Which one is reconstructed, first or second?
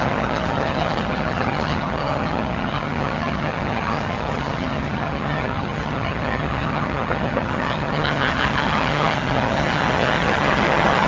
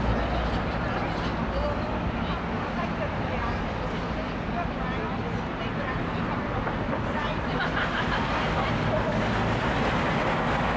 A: first